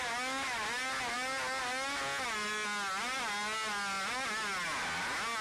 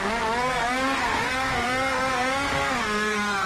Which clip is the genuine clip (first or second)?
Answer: first